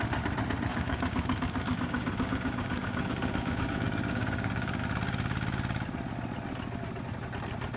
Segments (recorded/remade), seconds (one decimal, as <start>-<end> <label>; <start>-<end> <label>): 0.0-0.7 recorded; 0.7-4.8 remade; 4.8-7.8 recorded

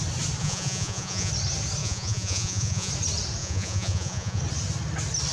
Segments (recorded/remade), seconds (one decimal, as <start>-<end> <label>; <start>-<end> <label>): 0.0-0.4 recorded; 0.4-1.3 remade; 1.3-1.8 recorded; 1.8-2.9 remade; 2.9-3.4 recorded; 3.4-4.4 remade; 4.4-5.3 recorded

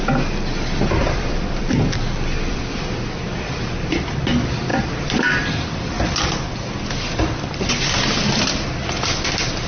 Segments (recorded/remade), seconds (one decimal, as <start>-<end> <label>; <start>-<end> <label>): 0.0-1.0 recorded; 1.0-2.6 remade; 2.6-4.7 recorded; 4.7-7.7 remade; 7.7-9.7 recorded

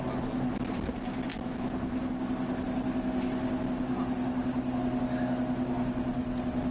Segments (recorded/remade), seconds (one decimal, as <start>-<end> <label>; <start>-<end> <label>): 0.0-6.7 recorded